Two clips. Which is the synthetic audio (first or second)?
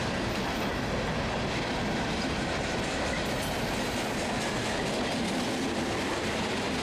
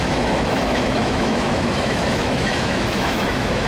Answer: second